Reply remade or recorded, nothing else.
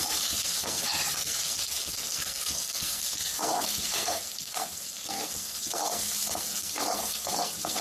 remade